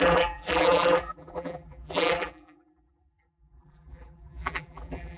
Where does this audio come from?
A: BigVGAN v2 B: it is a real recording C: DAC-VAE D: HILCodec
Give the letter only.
A